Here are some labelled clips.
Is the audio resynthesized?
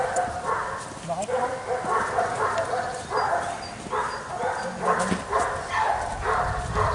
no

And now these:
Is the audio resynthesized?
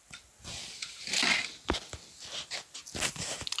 no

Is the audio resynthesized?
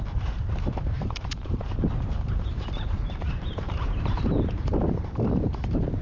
yes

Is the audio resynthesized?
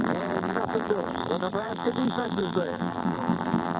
yes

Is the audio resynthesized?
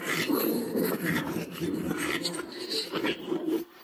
yes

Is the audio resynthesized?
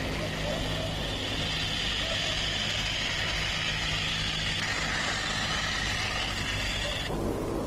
no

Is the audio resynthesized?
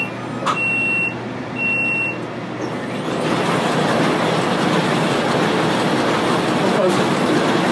no